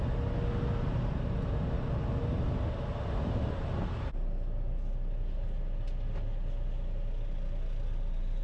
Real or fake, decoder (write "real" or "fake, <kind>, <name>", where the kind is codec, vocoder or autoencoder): real